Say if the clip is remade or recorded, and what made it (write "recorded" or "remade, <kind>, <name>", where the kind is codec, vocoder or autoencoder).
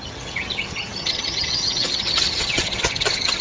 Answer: remade, vocoder, HiFi-GAN